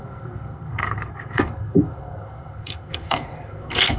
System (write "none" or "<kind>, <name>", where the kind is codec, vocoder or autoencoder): codec, SNAC